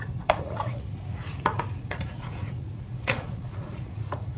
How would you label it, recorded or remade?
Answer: remade